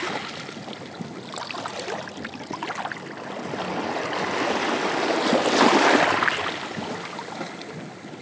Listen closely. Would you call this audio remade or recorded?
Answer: recorded